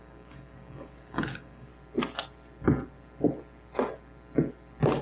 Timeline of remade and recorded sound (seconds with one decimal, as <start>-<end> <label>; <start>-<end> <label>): 0.0-1.7 remade; 1.7-5.0 recorded